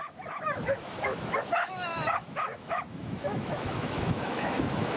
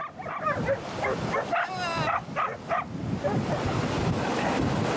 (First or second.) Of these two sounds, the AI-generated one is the first